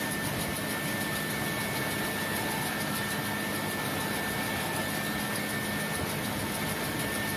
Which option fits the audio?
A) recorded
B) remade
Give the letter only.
A